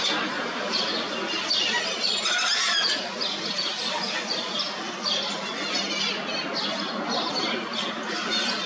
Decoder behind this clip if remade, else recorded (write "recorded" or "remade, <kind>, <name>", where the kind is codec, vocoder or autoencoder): recorded